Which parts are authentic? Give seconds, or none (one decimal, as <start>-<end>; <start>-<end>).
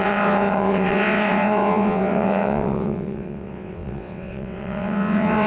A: none